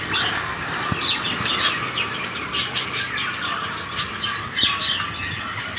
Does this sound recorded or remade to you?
remade